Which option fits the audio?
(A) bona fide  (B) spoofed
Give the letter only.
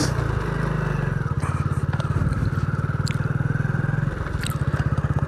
A